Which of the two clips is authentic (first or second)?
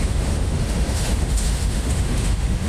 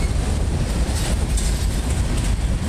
second